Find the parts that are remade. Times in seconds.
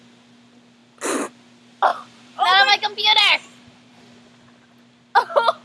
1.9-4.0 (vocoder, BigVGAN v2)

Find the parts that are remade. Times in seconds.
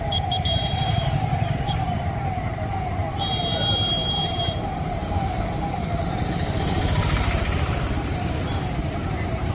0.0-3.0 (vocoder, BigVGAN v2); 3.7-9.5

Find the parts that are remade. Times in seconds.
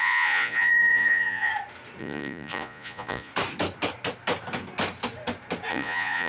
0.0-1.5 (vocoder, Vocos); 2.0-3.3; 5.7-6.3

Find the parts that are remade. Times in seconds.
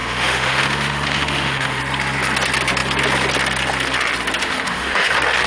0.0-1.8 (autoencoder, DAC-VAE); 4.4-5.1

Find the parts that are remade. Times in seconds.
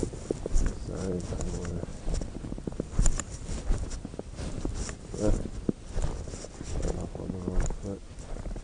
1.9-5.9 (vocoder, BigVGAN v2); 8.0-8.6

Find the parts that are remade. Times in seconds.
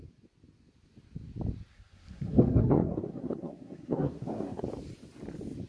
1.7-4.6 (codec, SNAC)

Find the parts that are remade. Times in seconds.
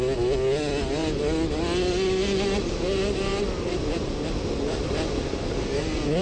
none